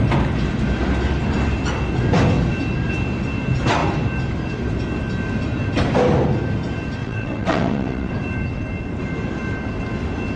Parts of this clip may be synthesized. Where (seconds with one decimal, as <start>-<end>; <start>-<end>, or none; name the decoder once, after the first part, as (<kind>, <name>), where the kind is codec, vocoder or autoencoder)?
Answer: 7.0-8.1 (vocoder, WaveNeXt)